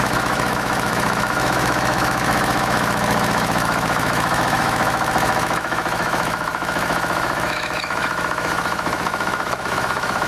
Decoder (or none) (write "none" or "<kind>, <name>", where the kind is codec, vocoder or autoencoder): autoencoder, DAC-VAE